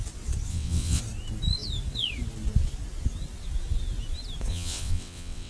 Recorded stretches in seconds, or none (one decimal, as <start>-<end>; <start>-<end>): 0.0-0.5; 1.0-4.5